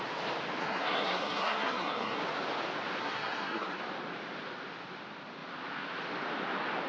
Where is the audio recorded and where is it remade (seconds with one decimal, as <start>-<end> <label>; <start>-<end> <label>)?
0.0-0.6 recorded; 0.6-2.2 remade; 2.2-3.0 recorded; 3.0-3.8 remade; 3.8-6.9 recorded